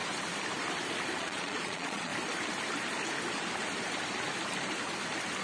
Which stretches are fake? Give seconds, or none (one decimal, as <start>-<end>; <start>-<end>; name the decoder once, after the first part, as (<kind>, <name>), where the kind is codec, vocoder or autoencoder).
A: 1.2-2.1 (vocoder, Vocos)